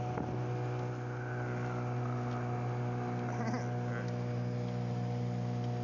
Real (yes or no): yes